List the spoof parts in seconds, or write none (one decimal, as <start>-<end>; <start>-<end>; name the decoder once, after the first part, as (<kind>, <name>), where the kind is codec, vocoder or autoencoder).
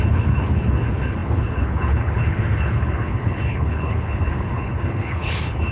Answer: 0.0-5.7 (codec, HILCodec)